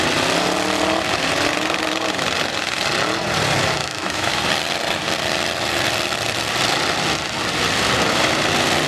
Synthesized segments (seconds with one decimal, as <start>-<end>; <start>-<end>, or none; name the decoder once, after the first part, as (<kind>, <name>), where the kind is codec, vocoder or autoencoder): 3.8-4.4 (autoencoder, DAC-VAE)